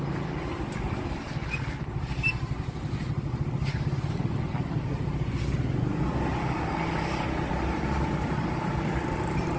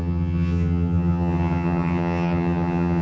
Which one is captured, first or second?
first